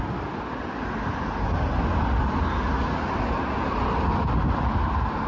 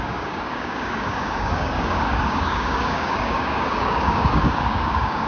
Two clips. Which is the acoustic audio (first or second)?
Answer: first